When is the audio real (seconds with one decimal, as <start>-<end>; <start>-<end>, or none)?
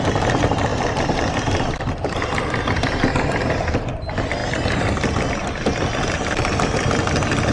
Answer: 4.4-5.3